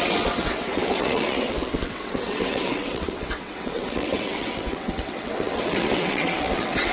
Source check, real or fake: fake